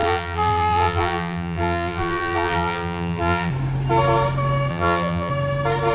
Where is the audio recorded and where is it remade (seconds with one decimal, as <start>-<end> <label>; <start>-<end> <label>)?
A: 0.0-3.5 remade; 3.5-4.7 recorded; 4.7-5.3 remade; 5.3-5.9 recorded